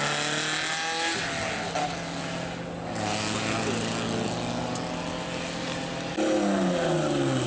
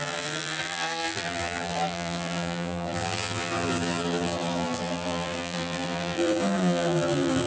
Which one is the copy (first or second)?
second